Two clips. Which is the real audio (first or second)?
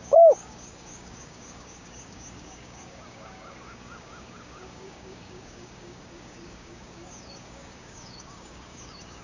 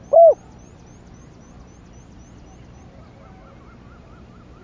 second